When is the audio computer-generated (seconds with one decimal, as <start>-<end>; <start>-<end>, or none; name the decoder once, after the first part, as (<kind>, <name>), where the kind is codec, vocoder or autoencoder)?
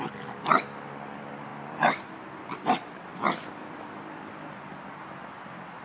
none